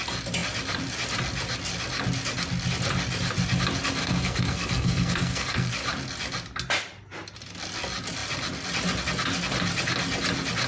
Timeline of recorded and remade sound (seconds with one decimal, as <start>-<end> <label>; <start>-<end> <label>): 0.0-4.0 recorded; 4.0-5.7 remade; 5.7-10.7 recorded